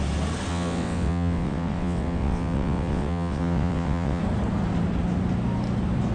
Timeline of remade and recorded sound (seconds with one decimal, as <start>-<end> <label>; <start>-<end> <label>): 0.0-0.5 recorded; 0.5-4.2 remade; 4.2-6.1 recorded